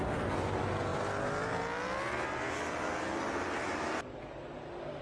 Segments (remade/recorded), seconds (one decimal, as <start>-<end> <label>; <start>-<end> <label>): 0.0-5.0 recorded

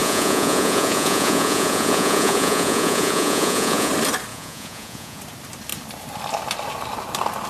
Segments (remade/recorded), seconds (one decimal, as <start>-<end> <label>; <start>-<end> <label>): 0.0-3.9 remade; 3.9-4.3 recorded; 4.3-5.2 remade; 5.2-7.5 recorded

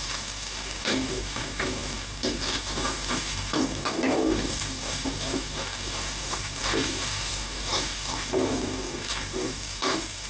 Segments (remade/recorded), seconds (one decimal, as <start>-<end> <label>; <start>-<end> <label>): 0.0-10.3 remade

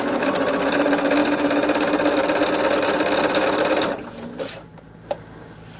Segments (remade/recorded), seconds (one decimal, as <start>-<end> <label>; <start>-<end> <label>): 0.0-5.8 recorded

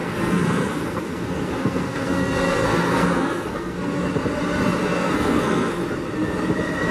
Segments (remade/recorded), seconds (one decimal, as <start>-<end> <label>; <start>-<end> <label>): 0.0-4.1 remade; 4.1-4.8 recorded; 4.8-5.7 remade; 5.7-6.9 recorded